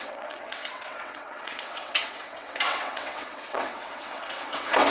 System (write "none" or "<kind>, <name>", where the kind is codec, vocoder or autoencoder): vocoder, WaveNeXt